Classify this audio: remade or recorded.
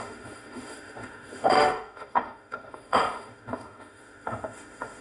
remade